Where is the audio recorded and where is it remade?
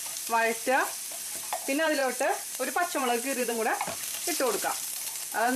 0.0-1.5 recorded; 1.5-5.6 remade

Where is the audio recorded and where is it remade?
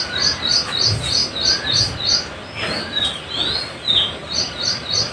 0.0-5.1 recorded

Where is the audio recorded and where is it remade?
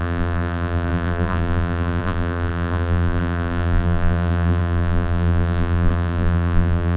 0.0-7.0 remade